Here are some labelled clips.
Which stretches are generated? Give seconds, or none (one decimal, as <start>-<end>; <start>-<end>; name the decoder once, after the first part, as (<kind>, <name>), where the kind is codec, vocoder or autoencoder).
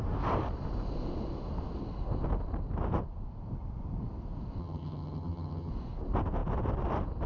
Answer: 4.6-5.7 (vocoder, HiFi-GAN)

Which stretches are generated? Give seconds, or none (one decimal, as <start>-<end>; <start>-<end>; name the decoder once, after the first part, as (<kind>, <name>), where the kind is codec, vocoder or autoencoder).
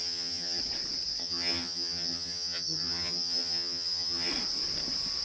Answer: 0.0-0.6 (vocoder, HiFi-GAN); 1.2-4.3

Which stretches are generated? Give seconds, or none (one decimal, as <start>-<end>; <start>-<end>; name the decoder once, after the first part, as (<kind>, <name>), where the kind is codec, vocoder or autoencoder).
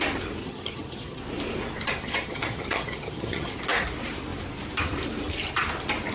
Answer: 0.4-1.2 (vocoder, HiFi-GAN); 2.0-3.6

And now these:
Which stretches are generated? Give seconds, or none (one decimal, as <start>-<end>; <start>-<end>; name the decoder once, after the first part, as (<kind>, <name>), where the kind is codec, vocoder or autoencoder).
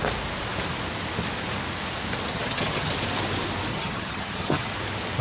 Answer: 2.3-2.9 (vocoder, HiFi-GAN); 3.7-4.7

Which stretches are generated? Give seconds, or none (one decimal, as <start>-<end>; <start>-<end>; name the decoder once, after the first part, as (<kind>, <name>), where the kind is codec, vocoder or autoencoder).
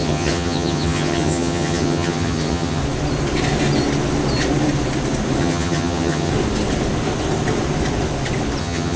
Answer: 0.0-2.8 (vocoder, HiFi-GAN); 5.4-6.3; 8.6-9.0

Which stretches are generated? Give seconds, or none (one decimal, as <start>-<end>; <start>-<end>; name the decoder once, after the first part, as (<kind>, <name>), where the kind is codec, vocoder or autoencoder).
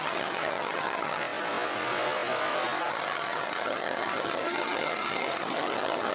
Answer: 0.0-1.2 (vocoder, HiFi-GAN); 2.9-6.1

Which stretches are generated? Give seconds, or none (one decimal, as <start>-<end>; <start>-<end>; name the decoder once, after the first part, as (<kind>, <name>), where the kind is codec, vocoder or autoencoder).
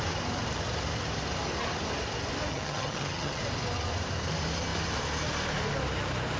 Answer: 2.5-3.4 (vocoder, HiFi-GAN)